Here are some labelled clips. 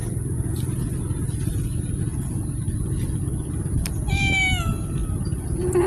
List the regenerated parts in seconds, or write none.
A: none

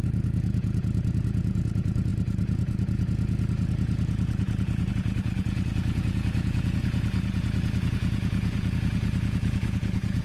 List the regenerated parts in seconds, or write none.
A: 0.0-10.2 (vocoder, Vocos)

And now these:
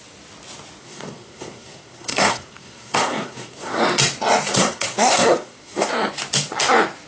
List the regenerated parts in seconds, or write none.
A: 0.8-3.8 (codec, SNAC); 4.5-5.9

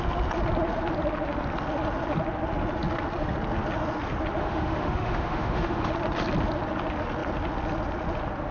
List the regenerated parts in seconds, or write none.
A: 4.4-5.9 (autoencoder, DAC-VAE)